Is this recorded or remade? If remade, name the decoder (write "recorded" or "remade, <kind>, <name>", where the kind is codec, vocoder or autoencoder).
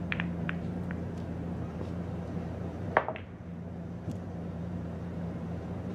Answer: remade, vocoder, BigVGAN v2